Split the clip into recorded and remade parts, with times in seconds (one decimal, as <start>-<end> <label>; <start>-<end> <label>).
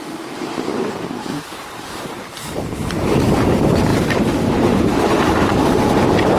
0.0-6.4 remade